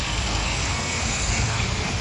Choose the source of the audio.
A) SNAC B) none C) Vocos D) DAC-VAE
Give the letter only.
A